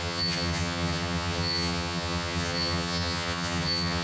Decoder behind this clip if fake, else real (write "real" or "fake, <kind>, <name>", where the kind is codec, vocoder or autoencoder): fake, vocoder, HiFi-GAN